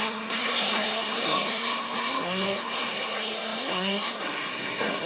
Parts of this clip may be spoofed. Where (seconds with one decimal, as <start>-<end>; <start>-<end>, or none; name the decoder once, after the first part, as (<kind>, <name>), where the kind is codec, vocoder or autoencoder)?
0.0-5.1 (codec, SNAC)